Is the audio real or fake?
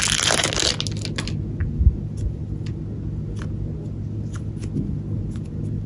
real